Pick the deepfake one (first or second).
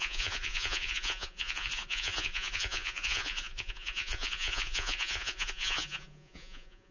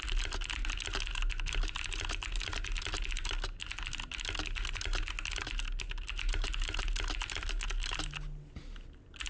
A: first